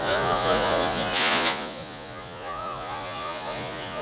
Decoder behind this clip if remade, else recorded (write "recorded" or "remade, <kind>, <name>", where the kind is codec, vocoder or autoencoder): remade, vocoder, Vocos